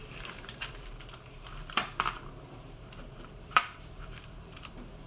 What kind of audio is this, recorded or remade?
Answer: remade